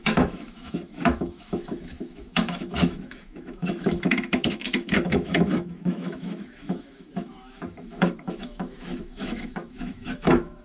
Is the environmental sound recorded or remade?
remade